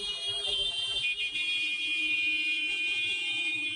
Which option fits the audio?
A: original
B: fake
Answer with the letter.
B